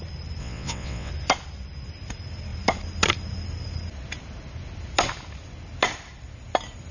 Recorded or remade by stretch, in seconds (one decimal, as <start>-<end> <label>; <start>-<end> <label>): 0.0-0.4 recorded; 0.4-1.1 remade; 1.1-6.9 recorded